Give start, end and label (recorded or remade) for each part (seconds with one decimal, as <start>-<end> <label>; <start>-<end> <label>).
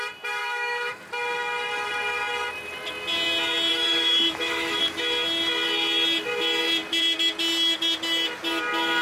0.0-0.4 recorded; 0.4-1.0 remade; 1.0-3.7 recorded; 3.7-4.8 remade; 4.8-9.0 recorded